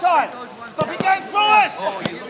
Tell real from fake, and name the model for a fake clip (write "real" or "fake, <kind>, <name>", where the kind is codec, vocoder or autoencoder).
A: real